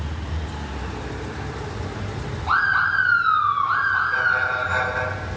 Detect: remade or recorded recorded